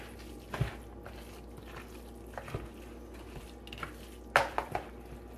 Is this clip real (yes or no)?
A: yes